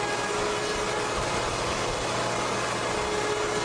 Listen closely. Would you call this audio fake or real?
real